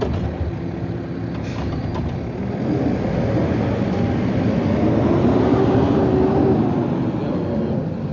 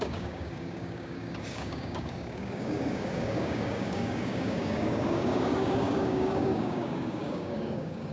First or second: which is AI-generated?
second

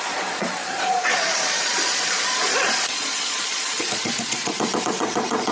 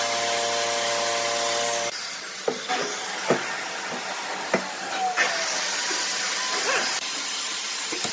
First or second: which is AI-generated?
first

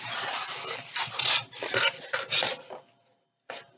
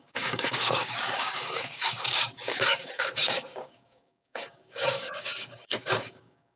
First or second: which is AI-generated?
second